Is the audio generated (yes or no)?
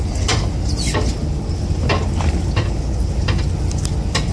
no